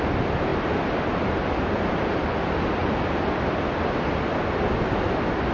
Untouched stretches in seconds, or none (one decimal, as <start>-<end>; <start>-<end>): 0.0-5.5